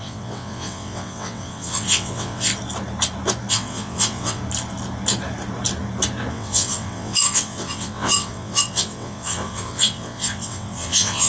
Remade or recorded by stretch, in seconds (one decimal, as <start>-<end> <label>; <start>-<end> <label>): 0.0-2.5 remade; 2.5-3.5 recorded; 3.5-4.4 remade; 4.4-6.3 recorded; 6.3-11.3 remade